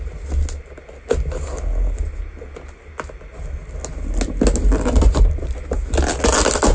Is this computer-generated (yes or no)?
no